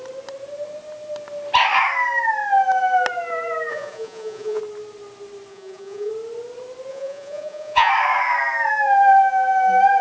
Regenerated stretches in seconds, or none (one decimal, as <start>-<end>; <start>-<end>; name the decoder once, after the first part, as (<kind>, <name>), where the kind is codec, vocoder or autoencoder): 3.7-4.6 (vocoder, Vocos); 5.5-6.1; 6.9-7.9

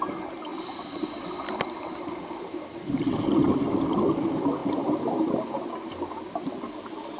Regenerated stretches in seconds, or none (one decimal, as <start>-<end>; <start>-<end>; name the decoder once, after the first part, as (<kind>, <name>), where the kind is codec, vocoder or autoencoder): none

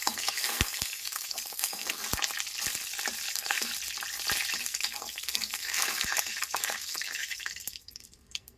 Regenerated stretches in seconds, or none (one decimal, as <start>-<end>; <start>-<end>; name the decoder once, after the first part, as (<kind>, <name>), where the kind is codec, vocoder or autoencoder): 0.0-2.1 (codec, SNAC); 3.3-3.7; 4.6-8.6

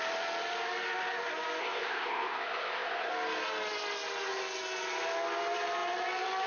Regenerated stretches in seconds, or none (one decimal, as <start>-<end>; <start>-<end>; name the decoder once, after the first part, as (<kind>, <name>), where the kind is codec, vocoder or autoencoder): 1.6-3.1 (codec, ZipCodec)

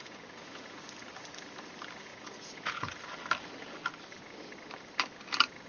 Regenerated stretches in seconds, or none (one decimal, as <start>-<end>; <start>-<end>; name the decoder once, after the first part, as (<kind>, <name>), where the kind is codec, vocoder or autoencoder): 0.0-0.8 (vocoder, Vocos); 2.1-2.9

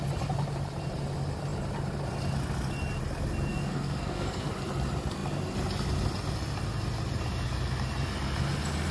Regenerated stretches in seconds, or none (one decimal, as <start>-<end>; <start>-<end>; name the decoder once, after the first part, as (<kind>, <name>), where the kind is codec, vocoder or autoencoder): 3.5-4.5 (codec, SNAC)

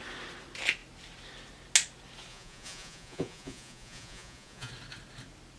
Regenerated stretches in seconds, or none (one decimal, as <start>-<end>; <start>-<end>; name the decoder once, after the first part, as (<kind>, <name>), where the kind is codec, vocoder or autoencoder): 2.3-4.7 (vocoder, Vocos)

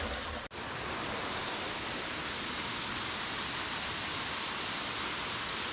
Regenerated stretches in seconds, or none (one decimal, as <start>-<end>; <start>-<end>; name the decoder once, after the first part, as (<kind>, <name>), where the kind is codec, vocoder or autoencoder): none